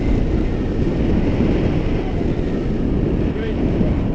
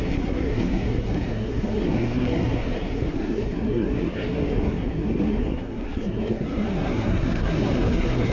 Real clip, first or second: first